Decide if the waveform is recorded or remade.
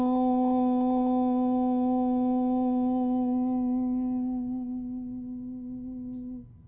recorded